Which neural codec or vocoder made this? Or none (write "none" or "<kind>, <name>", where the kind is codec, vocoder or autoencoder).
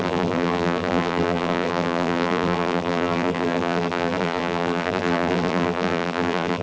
vocoder, BigVGAN v2